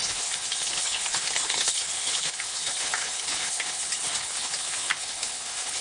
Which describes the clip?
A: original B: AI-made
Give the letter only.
B